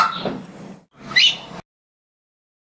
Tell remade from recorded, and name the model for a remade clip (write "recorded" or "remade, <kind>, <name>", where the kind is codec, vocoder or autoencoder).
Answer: recorded